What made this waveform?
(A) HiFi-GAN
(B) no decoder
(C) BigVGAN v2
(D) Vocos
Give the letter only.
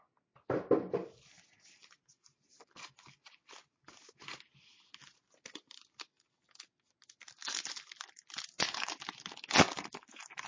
B